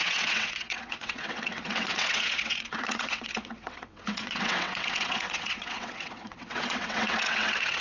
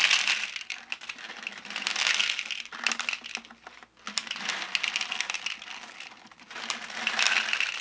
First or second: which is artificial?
first